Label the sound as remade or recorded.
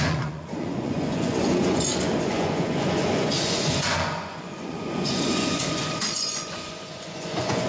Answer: remade